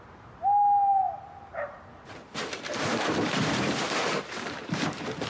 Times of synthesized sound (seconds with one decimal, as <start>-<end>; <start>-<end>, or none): 1.9-5.3